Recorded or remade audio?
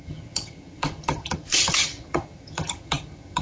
remade